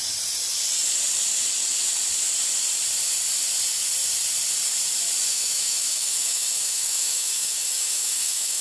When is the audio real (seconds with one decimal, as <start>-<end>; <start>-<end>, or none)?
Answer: 0.0-5.3